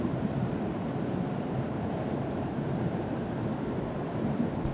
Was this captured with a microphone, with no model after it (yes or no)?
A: no